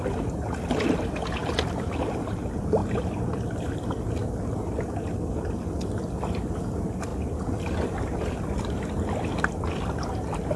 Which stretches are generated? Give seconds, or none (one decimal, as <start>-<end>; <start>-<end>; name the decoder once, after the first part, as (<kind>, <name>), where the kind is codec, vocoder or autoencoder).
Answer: 2.8-4.5 (vocoder, BigVGAN v2)